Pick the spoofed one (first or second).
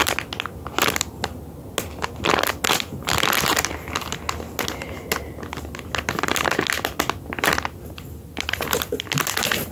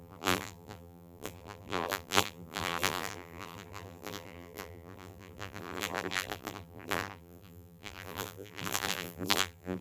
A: second